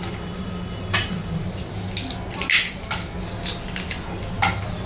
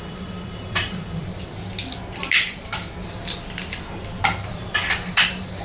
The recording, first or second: first